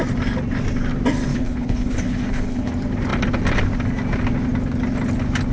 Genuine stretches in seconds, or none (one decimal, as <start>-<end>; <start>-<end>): 0.0-1.3; 2.7-5.5